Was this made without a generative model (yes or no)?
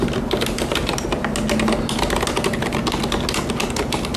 yes